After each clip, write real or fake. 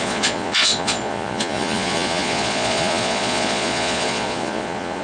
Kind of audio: fake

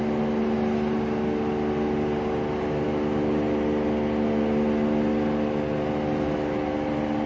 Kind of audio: real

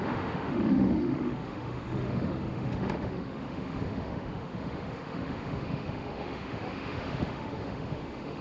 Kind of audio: fake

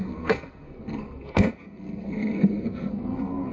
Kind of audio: fake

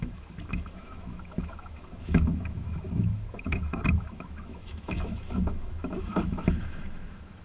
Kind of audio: fake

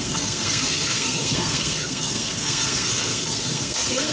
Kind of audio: fake